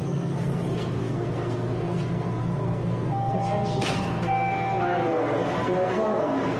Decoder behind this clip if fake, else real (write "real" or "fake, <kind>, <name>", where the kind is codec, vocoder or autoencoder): fake, codec, SNAC